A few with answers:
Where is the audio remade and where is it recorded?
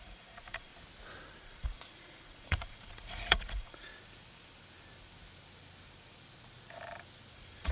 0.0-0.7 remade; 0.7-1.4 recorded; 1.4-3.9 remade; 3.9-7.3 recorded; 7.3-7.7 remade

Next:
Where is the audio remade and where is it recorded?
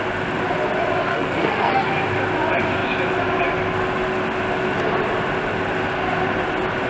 0.0-1.1 recorded; 1.1-1.9 remade; 1.9-6.9 recorded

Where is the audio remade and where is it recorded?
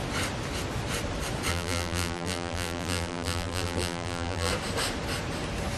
0.0-1.5 recorded; 1.5-4.5 remade; 4.5-5.8 recorded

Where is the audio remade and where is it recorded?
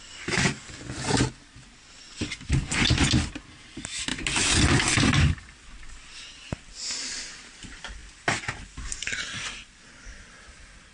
0.0-10.9 recorded